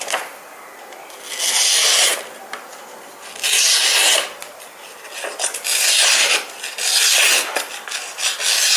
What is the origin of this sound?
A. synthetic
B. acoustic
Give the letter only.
B